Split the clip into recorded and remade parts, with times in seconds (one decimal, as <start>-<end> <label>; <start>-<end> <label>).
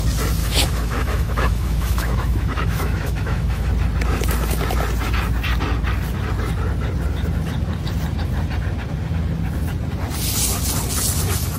0.0-0.4 recorded; 0.4-3.7 remade; 3.7-11.6 recorded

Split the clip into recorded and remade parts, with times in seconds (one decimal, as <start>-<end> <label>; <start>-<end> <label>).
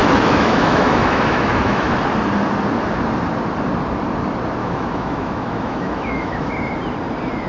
0.0-1.9 remade; 1.9-4.6 recorded; 4.6-6.5 remade; 6.5-7.5 recorded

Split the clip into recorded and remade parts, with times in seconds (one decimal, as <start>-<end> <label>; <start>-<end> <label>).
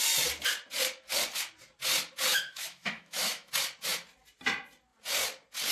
0.0-2.3 recorded; 2.3-3.5 remade; 3.5-5.7 recorded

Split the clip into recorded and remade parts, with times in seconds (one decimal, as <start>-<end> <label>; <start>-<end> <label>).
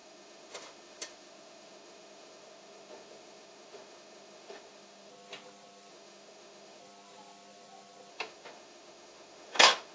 0.0-5.1 remade; 5.1-5.9 recorded; 5.9-6.8 remade; 6.8-8.1 recorded; 8.1-9.9 remade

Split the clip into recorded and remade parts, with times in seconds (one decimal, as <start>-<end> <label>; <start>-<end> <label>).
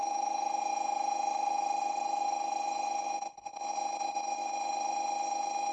0.0-5.7 recorded